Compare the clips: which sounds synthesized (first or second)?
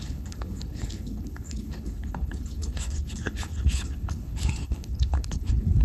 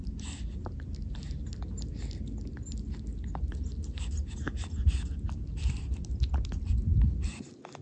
first